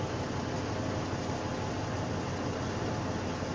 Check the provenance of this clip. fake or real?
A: real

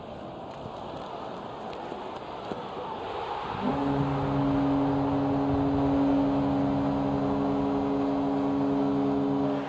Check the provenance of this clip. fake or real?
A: real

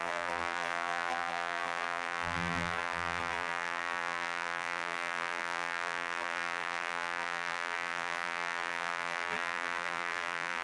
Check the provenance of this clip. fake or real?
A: fake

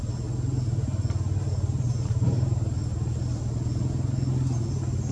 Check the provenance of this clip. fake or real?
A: real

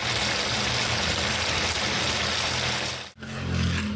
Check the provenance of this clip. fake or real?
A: real